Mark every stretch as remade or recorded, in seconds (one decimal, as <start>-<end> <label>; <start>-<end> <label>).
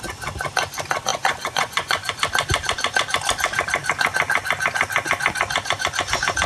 0.0-1.1 recorded; 1.1-2.1 remade; 2.1-6.5 recorded